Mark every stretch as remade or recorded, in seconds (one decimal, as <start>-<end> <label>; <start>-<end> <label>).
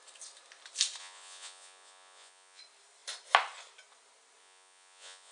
0.0-1.0 recorded; 1.0-2.6 remade; 2.6-4.4 recorded; 4.4-5.3 remade